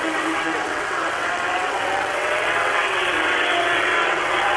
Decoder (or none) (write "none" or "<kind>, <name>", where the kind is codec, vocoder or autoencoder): vocoder, WaveNeXt